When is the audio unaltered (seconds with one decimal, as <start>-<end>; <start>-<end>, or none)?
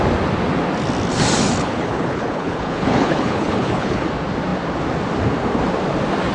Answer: 0.0-1.6; 4.1-6.3